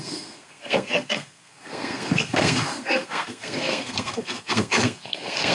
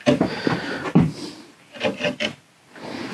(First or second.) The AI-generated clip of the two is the first